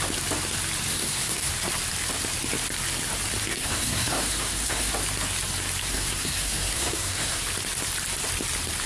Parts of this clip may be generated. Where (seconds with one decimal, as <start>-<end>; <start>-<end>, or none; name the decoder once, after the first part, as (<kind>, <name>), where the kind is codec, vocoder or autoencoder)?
0.9-1.5 (codec, SNAC); 3.5-4.9; 5.9-7.4